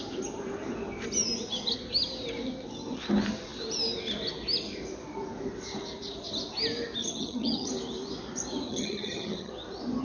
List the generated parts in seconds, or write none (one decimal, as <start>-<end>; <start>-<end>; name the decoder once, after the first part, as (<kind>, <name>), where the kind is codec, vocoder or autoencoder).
7.0-7.7 (vocoder, HiFi-GAN); 8.7-9.5